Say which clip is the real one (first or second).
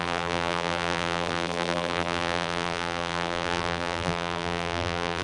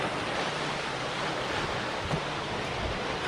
second